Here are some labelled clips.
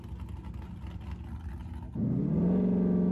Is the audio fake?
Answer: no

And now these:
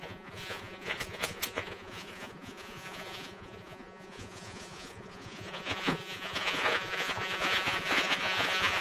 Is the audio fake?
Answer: yes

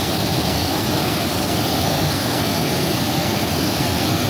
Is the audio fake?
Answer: yes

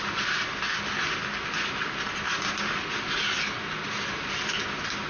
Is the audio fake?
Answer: no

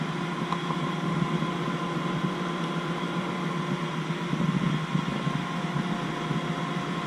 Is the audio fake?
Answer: no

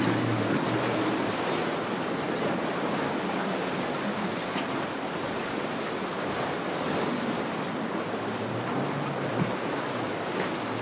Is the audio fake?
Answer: no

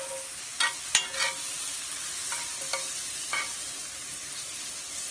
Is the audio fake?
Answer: no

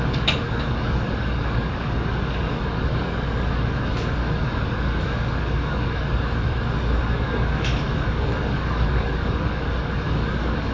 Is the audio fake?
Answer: yes